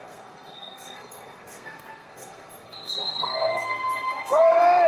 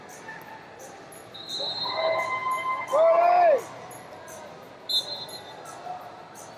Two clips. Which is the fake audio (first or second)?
first